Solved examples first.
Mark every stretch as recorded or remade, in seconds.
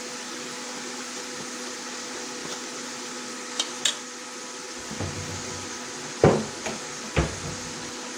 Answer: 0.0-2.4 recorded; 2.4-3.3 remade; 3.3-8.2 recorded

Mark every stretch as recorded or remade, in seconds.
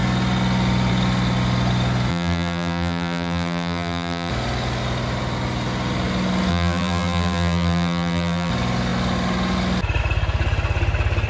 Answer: 0.0-2.1 recorded; 2.1-4.3 remade; 4.3-6.5 recorded; 6.5-8.5 remade; 8.5-11.3 recorded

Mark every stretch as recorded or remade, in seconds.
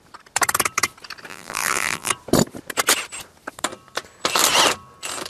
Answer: 0.0-1.3 recorded; 1.3-2.1 remade; 2.1-5.3 recorded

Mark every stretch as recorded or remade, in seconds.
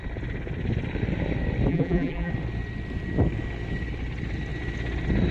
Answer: 0.0-1.7 recorded; 1.7-2.3 remade; 2.3-5.3 recorded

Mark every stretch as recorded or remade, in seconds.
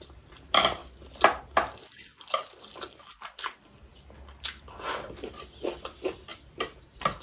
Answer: 0.0-0.8 remade; 0.8-5.1 recorded; 5.1-7.2 remade